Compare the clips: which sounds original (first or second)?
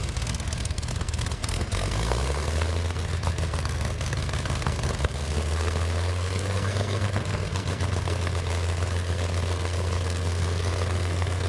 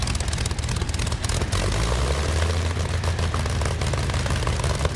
second